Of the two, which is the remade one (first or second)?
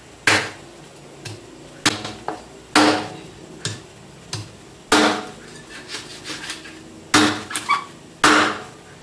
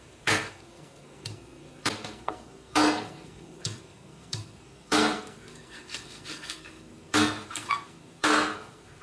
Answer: second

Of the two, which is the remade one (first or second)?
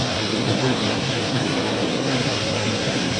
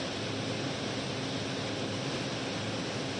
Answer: first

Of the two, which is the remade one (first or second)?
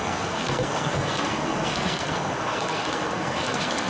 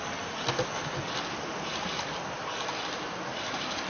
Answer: first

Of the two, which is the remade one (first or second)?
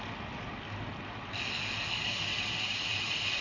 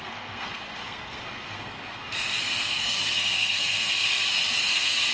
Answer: second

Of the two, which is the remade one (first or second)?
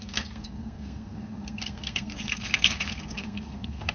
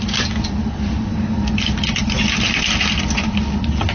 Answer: first